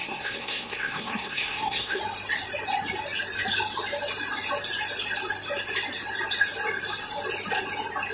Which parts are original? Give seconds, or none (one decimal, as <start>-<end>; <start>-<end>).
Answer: 2.0-8.1